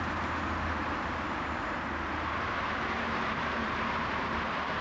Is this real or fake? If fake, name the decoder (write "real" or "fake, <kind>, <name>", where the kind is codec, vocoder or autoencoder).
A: fake, vocoder, BigVGAN v2